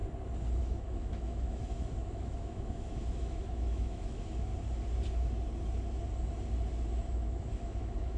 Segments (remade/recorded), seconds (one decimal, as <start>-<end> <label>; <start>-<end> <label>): 0.0-0.6 recorded; 0.6-4.5 remade; 4.5-7.1 recorded; 7.1-8.2 remade